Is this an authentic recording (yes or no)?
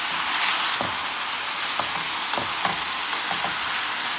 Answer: yes